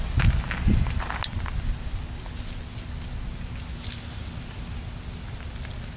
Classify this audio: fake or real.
real